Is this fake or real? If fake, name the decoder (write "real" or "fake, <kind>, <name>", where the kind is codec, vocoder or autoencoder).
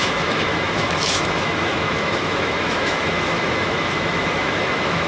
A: fake, autoencoder, DAC-VAE